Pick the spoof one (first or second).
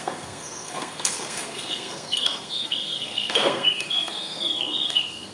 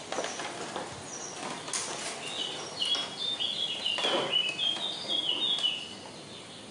first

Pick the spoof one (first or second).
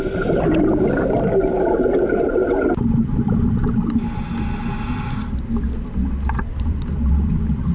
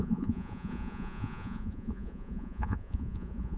second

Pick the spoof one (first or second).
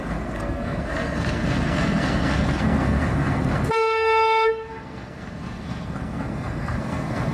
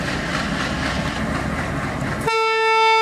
first